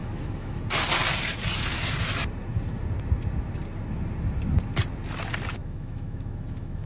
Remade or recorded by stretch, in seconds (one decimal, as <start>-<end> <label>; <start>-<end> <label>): 0.0-0.6 remade; 0.6-5.6 recorded; 5.6-6.9 remade